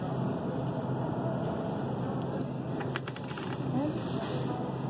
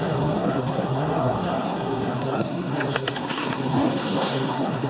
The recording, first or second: first